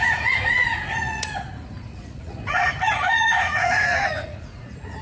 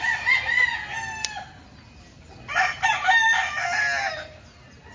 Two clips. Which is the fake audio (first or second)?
first